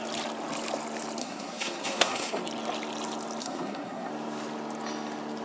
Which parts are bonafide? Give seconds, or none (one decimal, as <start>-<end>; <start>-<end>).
0.0-1.2; 2.4-3.4; 4.1-5.4